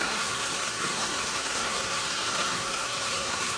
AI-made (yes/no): yes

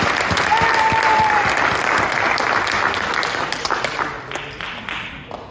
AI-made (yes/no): no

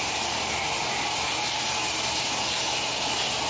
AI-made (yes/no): no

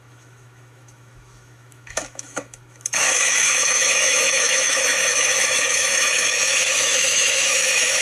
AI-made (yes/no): yes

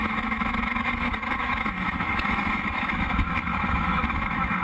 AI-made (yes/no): yes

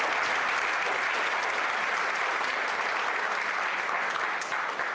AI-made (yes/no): no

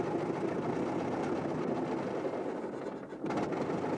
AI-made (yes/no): no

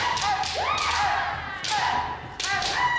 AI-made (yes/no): no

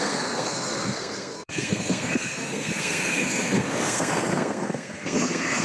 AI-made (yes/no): yes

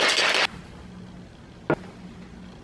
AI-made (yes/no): no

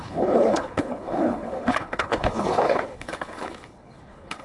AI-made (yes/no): yes